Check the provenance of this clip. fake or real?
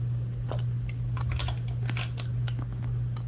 real